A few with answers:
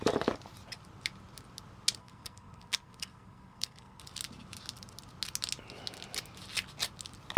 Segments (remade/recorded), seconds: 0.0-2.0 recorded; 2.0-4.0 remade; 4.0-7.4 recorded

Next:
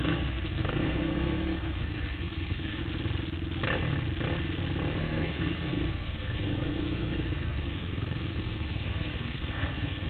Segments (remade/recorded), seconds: 0.0-2.8 remade; 2.8-5.0 recorded; 5.0-10.1 remade

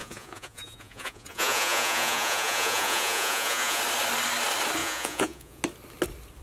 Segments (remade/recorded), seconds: 0.0-3.8 remade; 3.8-4.8 recorded; 4.8-5.6 remade; 5.6-6.4 recorded

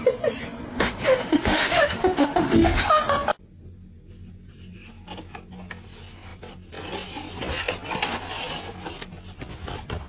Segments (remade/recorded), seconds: 0.0-0.7 recorded; 0.7-3.0 remade; 3.0-10.1 recorded

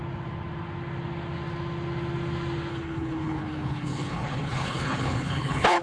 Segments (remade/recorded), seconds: 0.0-2.7 recorded; 2.7-5.8 remade

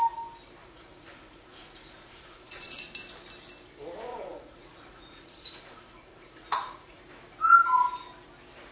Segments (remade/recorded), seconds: 0.0-0.6 recorded; 0.6-2.8 remade; 2.8-4.1 recorded; 4.1-7.0 remade; 7.0-8.7 recorded

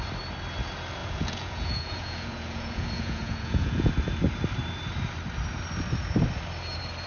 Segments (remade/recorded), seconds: 0.0-1.0 recorded; 1.0-3.9 remade; 3.9-7.1 recorded